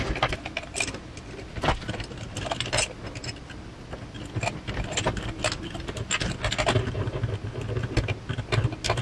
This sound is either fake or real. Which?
real